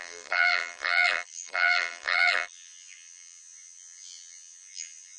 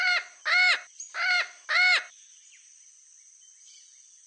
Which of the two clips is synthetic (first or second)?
first